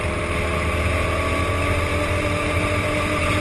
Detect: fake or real real